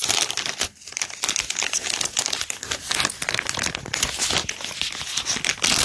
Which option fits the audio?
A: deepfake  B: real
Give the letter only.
B